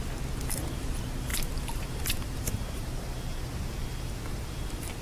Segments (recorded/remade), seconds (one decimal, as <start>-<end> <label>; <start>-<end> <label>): 0.0-1.3 recorded; 1.3-3.4 remade; 3.4-3.8 recorded; 3.8-5.0 remade

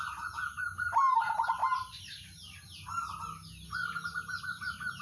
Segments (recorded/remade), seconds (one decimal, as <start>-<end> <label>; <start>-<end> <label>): 0.0-5.0 recorded

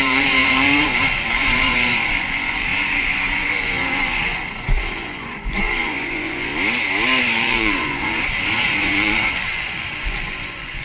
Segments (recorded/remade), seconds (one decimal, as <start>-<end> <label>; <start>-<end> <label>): 0.0-6.5 remade; 6.5-7.2 recorded; 7.2-10.8 remade

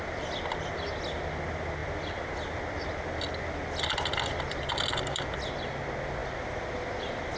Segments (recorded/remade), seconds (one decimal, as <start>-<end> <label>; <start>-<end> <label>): 0.0-7.4 recorded

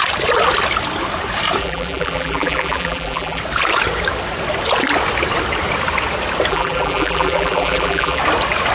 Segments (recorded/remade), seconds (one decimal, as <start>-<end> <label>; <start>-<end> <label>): 0.0-1.6 recorded; 1.6-3.4 remade; 3.4-6.5 recorded; 6.5-8.2 remade; 8.2-8.7 recorded